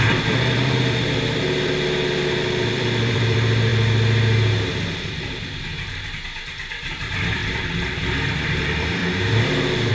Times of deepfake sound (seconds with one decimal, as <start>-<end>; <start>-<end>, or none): 0.0-3.7; 5.0-5.7; 6.4-9.0